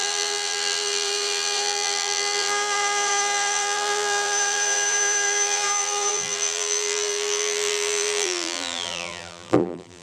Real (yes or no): no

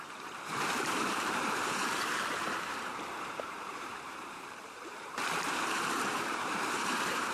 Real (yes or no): no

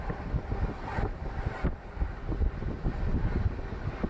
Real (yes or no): yes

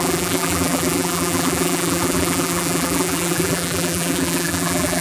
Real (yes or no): no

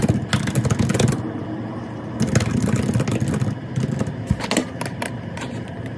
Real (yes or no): yes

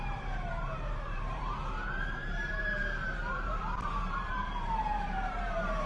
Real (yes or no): no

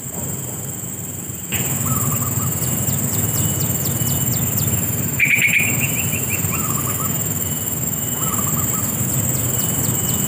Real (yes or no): no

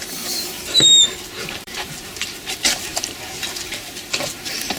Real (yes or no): no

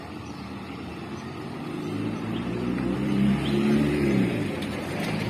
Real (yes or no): no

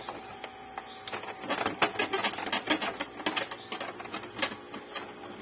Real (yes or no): yes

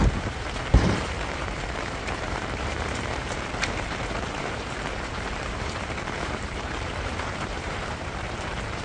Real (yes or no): no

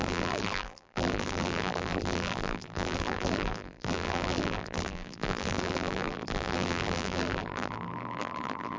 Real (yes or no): no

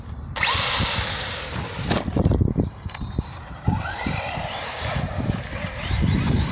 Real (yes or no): no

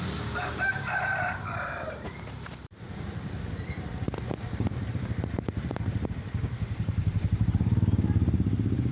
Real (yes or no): no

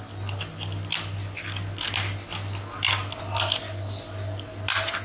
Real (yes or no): yes